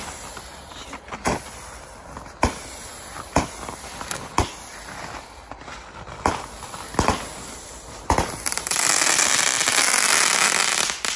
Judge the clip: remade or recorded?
recorded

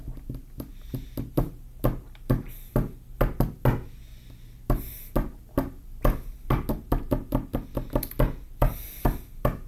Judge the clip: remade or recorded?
recorded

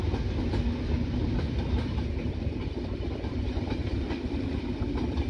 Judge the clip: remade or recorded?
recorded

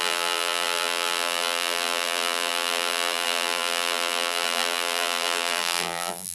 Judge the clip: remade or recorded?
remade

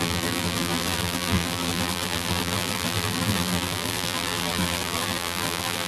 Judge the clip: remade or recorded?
remade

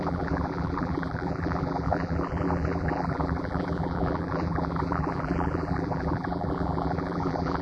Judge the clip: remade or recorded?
remade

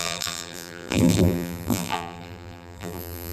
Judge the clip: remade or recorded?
remade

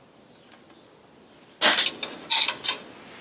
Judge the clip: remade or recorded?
recorded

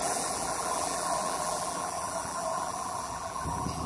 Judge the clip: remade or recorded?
remade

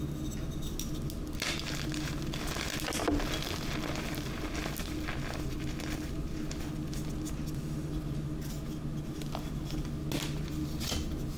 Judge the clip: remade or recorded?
recorded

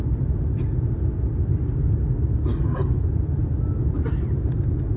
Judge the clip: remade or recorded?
recorded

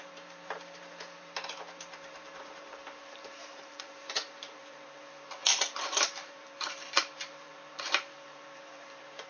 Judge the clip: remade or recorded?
remade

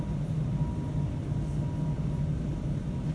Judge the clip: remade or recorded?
recorded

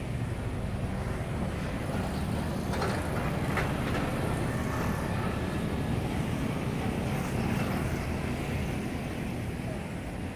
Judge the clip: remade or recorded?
recorded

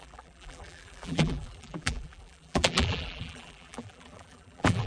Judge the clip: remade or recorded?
remade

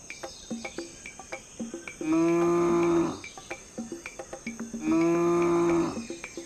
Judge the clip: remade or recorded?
recorded